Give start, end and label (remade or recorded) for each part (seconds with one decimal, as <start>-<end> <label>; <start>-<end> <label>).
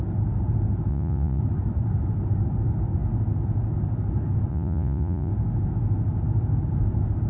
0.0-0.9 recorded; 0.9-1.4 remade; 1.4-4.5 recorded; 4.5-5.3 remade; 5.3-7.3 recorded